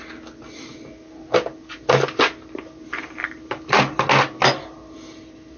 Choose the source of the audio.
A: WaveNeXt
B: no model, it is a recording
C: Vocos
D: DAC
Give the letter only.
B